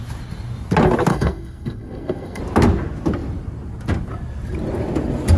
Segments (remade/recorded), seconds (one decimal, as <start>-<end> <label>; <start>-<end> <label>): 0.0-1.1 recorded; 1.1-2.4 remade; 2.4-5.4 recorded

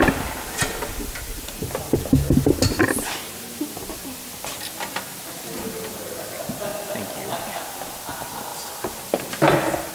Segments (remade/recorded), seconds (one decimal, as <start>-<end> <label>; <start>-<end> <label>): 0.0-9.9 recorded